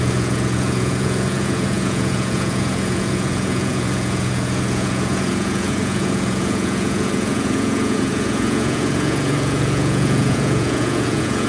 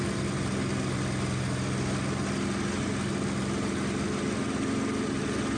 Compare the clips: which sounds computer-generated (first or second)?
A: first